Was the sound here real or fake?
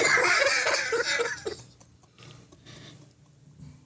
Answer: real